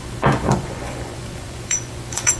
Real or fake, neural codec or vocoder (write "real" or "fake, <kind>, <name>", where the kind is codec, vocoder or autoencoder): fake, vocoder, Vocos